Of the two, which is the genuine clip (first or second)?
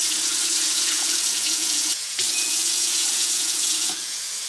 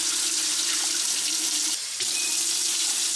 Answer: second